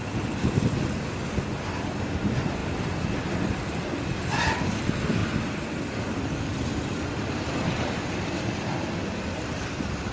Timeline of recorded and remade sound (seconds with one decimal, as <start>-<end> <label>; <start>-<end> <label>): 0.0-2.6 remade; 2.6-3.5 recorded; 3.5-9.0 remade; 9.0-9.5 recorded; 9.5-10.1 remade